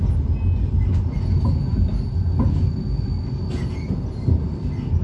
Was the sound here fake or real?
real